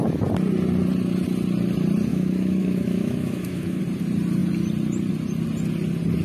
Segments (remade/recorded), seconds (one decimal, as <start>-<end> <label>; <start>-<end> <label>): 0.0-2.1 recorded; 2.1-3.8 remade; 3.8-6.2 recorded